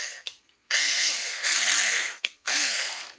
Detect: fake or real fake